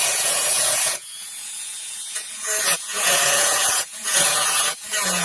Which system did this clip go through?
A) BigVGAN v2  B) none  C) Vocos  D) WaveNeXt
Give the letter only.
C